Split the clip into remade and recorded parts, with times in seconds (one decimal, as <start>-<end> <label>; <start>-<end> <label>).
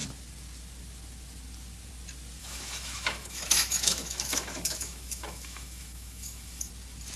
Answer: 0.0-2.4 recorded; 2.4-6.7 remade; 6.7-7.2 recorded